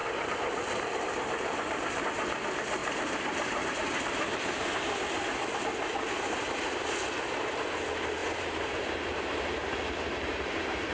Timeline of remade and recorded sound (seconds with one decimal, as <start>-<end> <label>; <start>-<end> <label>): 0.0-2.0 remade; 2.0-2.8 recorded; 2.8-5.3 remade; 5.3-8.2 recorded; 8.2-10.9 remade